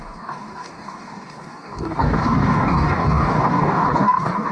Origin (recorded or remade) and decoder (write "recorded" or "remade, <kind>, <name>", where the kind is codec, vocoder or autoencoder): remade, codec, DAC